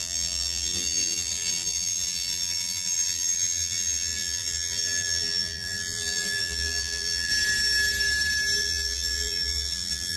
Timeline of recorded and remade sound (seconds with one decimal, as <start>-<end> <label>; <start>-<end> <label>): 0.0-7.3 remade; 7.3-8.6 recorded; 8.6-10.2 remade